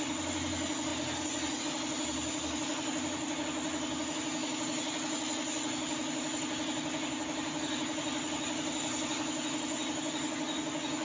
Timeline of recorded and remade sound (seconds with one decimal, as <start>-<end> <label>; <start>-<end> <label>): 0.0-11.0 recorded